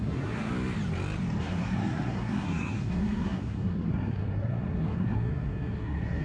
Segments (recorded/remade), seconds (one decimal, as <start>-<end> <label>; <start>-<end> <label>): 0.0-0.5 remade; 0.5-1.4 recorded; 1.4-6.2 remade